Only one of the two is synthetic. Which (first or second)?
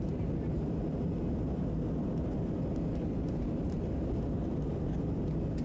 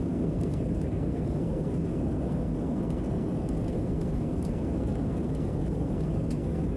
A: second